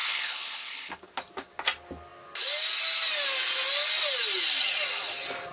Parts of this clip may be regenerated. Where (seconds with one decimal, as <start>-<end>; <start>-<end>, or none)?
0.0-0.9